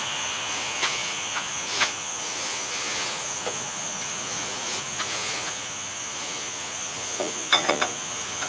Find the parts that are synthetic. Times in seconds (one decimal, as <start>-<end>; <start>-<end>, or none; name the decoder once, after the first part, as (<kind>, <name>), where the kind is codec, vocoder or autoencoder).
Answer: 0.0-8.5 (vocoder, Vocos)